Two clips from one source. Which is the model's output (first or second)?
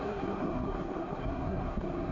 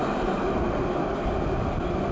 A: first